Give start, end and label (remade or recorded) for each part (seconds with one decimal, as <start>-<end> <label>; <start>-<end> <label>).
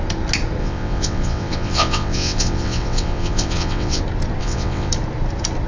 0.0-0.6 recorded; 0.6-4.0 remade; 4.0-4.4 recorded; 4.4-4.9 remade; 4.9-5.7 recorded